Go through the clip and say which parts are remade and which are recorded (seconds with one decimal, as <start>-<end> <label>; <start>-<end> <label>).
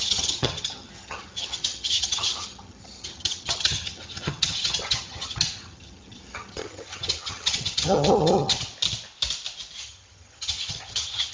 0.0-8.7 remade; 8.7-9.8 recorded; 9.8-11.3 remade